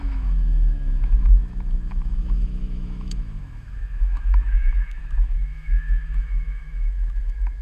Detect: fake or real fake